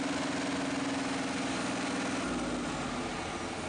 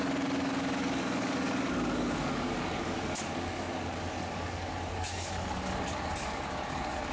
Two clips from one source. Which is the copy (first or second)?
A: second